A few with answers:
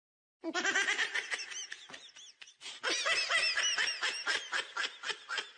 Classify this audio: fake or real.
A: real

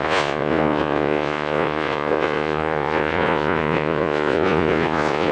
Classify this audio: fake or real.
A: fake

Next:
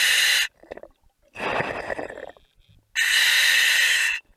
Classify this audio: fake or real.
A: real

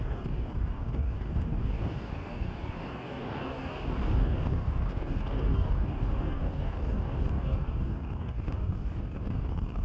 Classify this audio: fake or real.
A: fake